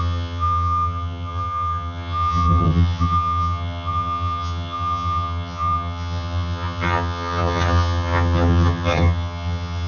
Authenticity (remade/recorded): remade